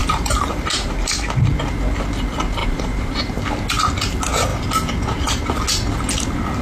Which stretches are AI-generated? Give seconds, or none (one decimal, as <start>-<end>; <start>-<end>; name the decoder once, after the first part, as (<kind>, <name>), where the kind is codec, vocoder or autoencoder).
0.0-1.0 (vocoder, BigVGAN v2); 2.6-3.5